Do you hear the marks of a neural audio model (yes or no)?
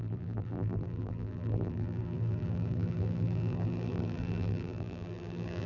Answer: yes